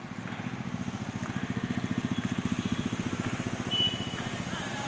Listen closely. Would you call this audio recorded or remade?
recorded